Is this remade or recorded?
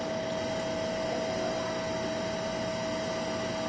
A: recorded